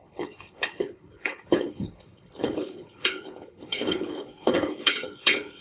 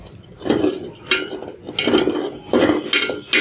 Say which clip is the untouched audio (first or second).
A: second